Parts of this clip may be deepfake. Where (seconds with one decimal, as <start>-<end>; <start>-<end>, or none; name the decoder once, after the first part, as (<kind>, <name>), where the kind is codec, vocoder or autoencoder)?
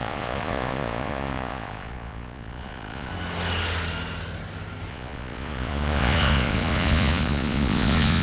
0.0-3.1 (vocoder, Vocos); 4.9-8.2